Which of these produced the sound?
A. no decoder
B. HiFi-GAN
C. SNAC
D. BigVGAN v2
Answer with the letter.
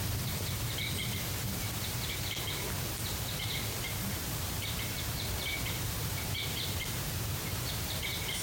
D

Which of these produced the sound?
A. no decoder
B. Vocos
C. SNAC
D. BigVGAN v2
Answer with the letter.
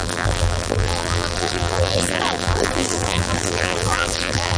D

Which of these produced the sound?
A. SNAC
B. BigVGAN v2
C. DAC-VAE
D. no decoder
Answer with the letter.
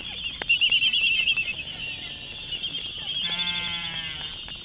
B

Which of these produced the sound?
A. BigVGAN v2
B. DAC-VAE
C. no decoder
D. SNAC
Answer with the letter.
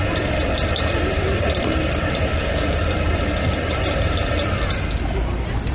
A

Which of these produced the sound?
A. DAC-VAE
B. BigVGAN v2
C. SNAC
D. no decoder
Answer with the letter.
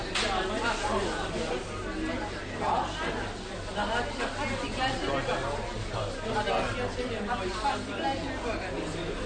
D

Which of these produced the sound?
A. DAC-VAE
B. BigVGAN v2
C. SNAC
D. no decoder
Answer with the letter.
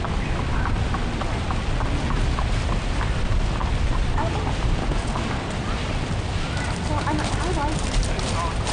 D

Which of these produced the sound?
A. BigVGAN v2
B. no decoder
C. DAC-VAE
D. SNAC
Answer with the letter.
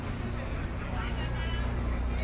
B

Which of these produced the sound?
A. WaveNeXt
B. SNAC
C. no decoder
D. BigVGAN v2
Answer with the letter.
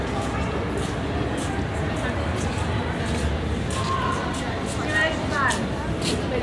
C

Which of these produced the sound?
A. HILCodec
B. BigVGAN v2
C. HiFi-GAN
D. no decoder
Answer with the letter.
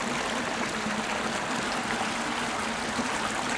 D